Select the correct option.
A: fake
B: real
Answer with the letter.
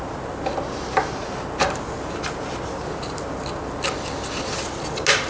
B